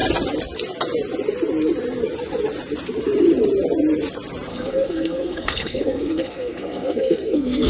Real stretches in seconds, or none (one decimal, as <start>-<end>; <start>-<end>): 0.0-4.5